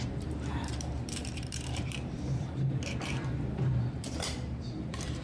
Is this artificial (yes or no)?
yes